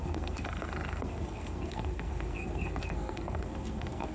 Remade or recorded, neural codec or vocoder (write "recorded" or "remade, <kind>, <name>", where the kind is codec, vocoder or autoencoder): remade, codec, SNAC